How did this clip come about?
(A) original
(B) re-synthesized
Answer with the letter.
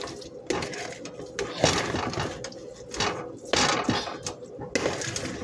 A